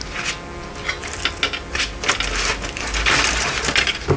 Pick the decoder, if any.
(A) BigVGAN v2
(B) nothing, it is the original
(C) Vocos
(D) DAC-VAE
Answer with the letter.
B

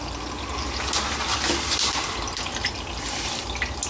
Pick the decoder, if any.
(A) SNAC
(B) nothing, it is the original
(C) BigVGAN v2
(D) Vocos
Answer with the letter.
B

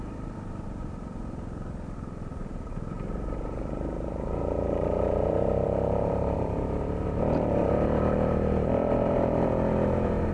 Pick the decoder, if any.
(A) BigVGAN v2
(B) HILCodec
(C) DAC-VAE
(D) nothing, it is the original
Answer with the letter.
A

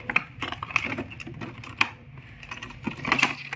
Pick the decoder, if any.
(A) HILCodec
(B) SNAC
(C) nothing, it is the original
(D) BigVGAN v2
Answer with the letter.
C